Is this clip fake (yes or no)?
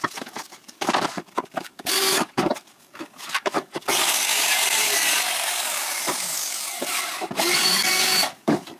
yes